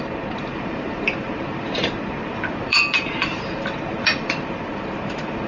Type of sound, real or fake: fake